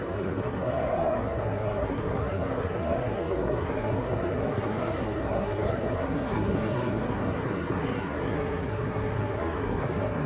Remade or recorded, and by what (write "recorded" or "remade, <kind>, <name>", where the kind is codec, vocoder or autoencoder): remade, codec, SNAC